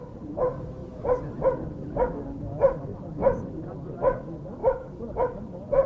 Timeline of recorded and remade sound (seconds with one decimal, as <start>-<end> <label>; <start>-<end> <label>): 0.0-2.9 recorded; 2.9-3.7 remade; 3.7-5.9 recorded